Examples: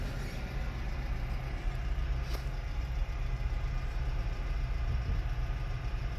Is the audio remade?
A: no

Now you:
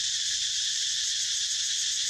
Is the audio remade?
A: no